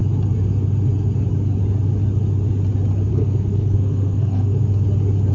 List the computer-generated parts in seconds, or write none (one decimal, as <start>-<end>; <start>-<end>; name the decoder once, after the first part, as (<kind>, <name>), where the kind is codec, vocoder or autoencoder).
3.1-4.6 (codec, SNAC)